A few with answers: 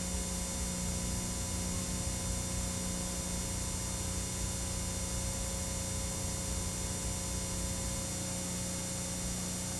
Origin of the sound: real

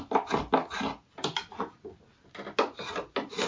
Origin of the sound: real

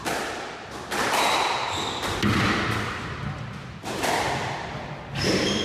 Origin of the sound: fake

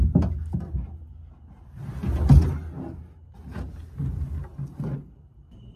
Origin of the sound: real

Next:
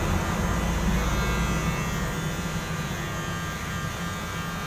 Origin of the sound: real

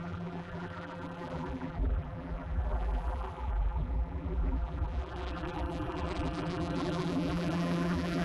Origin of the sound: fake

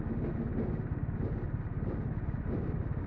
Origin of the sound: real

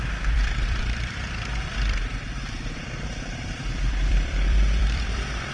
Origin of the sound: fake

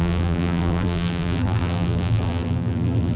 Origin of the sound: fake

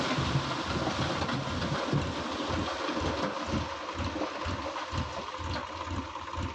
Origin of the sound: real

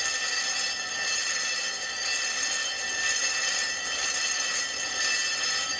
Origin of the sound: fake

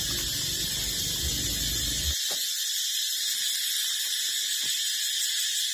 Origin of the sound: real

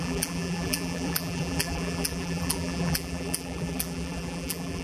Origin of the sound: fake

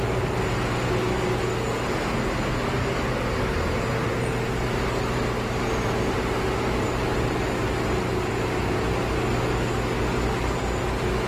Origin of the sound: real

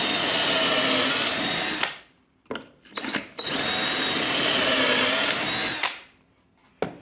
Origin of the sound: real